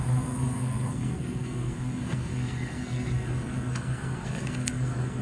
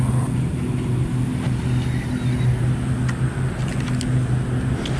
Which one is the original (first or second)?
second